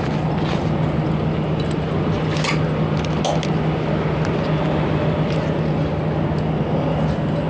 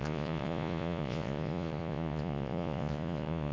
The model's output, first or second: second